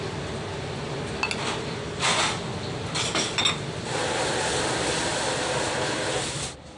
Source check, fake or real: real